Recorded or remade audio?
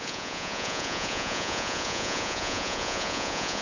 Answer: remade